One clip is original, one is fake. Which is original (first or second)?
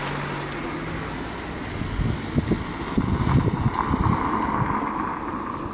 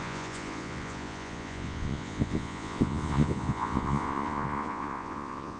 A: first